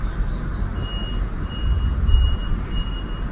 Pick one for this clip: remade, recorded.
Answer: recorded